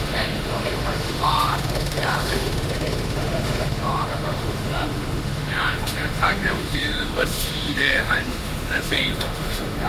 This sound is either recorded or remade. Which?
remade